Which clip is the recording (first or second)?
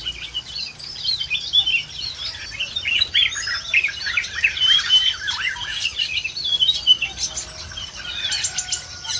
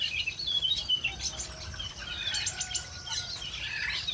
first